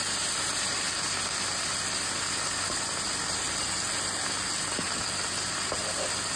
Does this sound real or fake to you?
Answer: real